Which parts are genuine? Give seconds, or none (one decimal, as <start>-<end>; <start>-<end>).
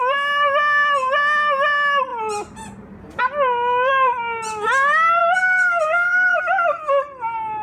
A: 0.0-5.2; 6.4-7.6